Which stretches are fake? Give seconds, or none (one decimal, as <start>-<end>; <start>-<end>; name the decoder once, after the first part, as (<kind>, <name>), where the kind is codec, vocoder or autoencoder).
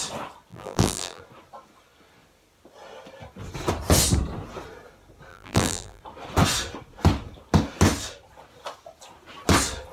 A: 0.5-1.2 (vocoder, BigVGAN v2); 5.3-6.0